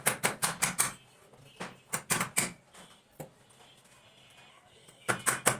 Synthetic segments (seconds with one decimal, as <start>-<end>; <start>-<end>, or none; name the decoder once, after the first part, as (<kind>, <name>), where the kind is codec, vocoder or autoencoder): 4.5-5.1 (codec, SNAC)